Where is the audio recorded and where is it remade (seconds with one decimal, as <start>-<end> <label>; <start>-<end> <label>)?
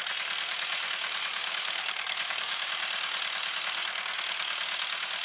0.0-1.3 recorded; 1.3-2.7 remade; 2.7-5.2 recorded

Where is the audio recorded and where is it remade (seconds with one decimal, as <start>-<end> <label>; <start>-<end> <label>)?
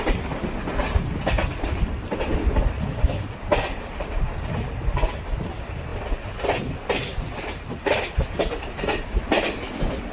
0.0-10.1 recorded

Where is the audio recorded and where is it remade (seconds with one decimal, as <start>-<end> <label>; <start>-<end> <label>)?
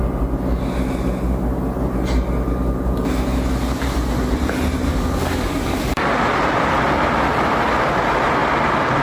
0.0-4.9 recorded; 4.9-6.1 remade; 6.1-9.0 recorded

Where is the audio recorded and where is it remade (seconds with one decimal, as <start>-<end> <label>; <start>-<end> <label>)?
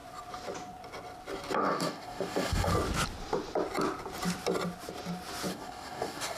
0.0-1.6 recorded; 1.6-2.7 remade; 2.7-5.5 recorded; 5.5-6.4 remade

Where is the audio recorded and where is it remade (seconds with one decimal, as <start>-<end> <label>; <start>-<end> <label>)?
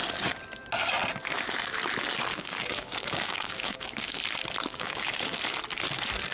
0.0-2.3 recorded; 2.3-4.2 remade; 4.2-4.7 recorded; 4.7-5.4 remade; 5.4-6.3 recorded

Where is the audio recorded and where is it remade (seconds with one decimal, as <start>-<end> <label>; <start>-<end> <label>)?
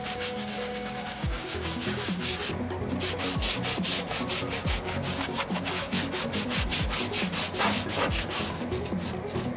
0.0-2.4 remade; 2.4-4.6 recorded; 4.6-6.0 remade; 6.0-9.6 recorded